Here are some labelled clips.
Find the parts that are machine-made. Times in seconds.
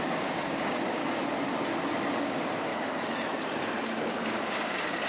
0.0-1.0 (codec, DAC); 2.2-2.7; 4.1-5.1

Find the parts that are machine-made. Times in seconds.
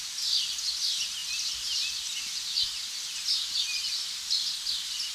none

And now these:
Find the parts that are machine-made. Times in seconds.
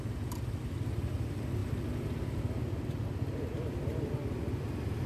none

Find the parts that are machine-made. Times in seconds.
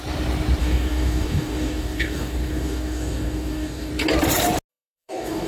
0.6-3.9 (codec, DAC); 4.7-5.5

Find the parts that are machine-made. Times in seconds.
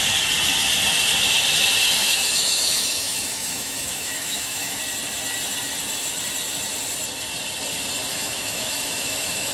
2.0-4.8 (autoencoder, DAC-VAE); 8.1-9.5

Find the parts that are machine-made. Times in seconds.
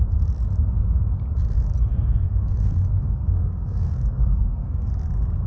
1.9-4.9 (codec, SNAC)